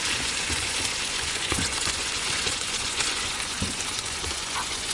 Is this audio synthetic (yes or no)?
yes